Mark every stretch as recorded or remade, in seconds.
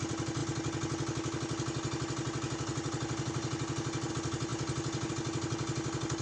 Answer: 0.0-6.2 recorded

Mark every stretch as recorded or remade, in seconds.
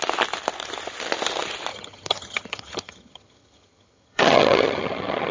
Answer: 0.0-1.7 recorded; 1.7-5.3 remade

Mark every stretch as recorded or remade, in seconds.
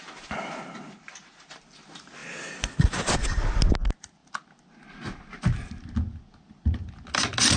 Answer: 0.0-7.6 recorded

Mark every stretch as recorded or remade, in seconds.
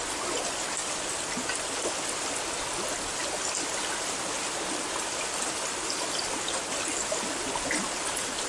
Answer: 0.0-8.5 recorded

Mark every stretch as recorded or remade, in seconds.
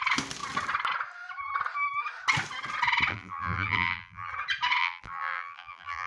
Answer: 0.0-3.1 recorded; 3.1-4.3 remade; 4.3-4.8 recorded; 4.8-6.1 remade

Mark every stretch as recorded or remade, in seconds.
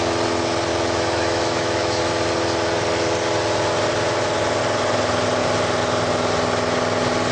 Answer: 0.0-0.7 recorded; 0.7-2.0 remade; 2.0-7.3 recorded